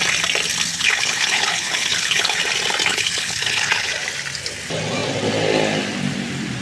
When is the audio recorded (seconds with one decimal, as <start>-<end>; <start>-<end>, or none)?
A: 0.0-0.7; 2.4-2.9; 3.9-6.6